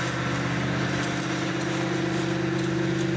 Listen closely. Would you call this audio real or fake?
real